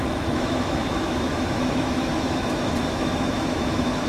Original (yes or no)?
no